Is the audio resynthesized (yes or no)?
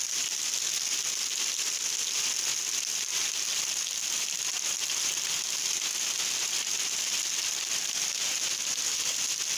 no